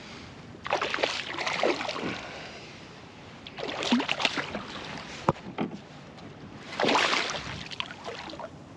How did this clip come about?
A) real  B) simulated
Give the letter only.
A